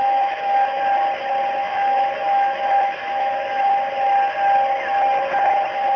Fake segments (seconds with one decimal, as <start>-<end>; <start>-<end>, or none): 0.0-0.8; 1.6-3.6